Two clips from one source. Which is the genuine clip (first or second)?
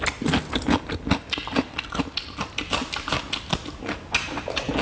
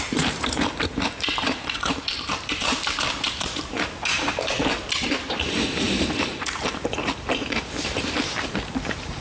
first